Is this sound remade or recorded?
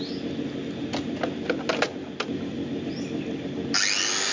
recorded